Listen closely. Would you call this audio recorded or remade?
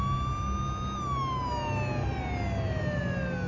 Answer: recorded